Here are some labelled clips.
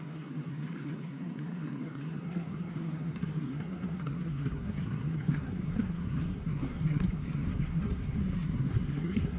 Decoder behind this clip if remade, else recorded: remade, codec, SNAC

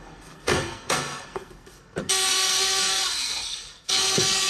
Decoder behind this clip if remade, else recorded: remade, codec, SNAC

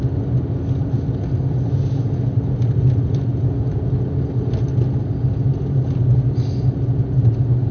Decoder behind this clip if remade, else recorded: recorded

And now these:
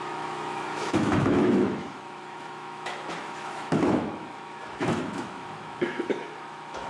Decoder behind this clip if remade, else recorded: remade, autoencoder, DAC-VAE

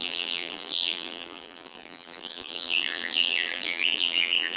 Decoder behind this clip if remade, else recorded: remade, vocoder, BigVGAN v2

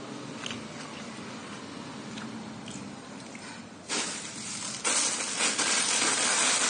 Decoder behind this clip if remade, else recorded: recorded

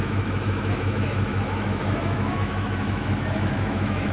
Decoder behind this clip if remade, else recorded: remade, autoencoder, DAC-VAE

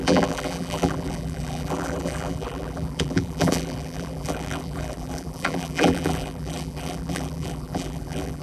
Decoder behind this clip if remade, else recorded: remade, vocoder, BigVGAN v2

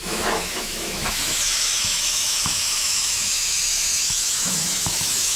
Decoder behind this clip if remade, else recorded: remade, autoencoder, DAC-VAE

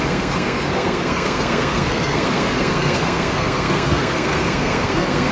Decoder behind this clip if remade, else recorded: remade, codec, SNAC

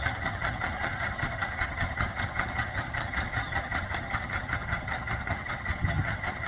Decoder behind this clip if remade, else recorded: remade, vocoder, HiFi-GAN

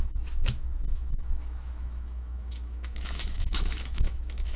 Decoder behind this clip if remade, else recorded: remade, autoencoder, DAC-VAE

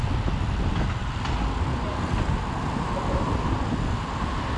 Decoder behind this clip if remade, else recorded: recorded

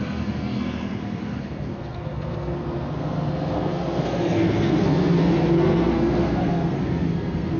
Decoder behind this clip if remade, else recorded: remade, codec, SNAC